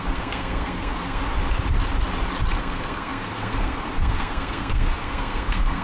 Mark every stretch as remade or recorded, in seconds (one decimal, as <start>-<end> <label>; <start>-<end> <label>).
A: 0.0-1.2 remade; 1.2-2.6 recorded; 2.6-5.8 remade